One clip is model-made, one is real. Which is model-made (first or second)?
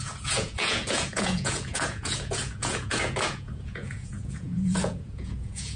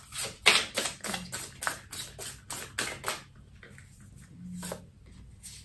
first